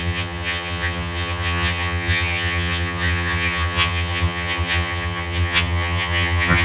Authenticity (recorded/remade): remade